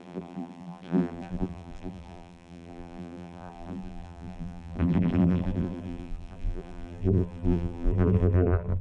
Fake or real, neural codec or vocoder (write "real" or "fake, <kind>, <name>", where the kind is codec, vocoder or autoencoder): fake, vocoder, BigVGAN v2